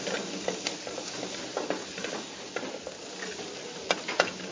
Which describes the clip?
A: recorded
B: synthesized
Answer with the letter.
A